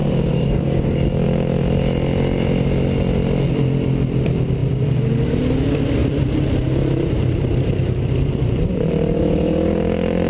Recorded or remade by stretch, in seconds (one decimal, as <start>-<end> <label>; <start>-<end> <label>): 0.0-0.5 remade; 0.5-4.6 recorded; 4.6-5.4 remade; 5.4-6.0 recorded; 6.0-9.2 remade; 9.2-10.3 recorded